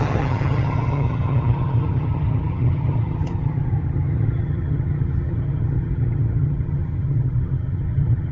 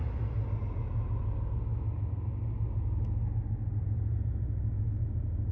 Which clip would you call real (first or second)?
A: second